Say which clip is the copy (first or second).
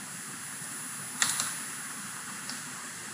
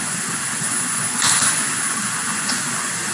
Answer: second